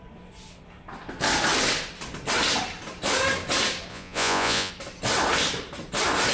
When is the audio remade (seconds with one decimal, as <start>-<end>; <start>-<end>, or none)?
3.9-4.7